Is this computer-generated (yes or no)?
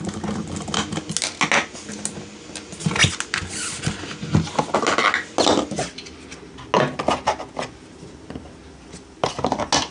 no